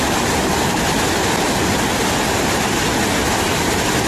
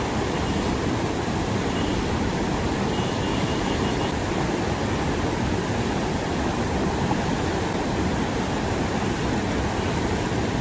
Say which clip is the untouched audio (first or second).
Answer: first